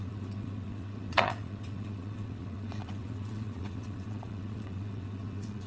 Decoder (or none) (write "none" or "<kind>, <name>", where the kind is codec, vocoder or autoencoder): vocoder, WaveNeXt